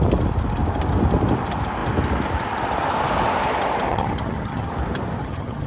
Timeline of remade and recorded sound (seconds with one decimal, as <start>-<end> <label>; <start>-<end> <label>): 0.0-3.9 recorded; 3.9-4.7 remade; 4.7-5.2 recorded; 5.2-5.7 remade